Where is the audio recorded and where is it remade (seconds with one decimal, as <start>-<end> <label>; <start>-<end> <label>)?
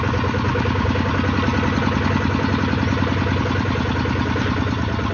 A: 0.0-0.5 recorded; 0.5-1.1 remade; 1.1-5.1 recorded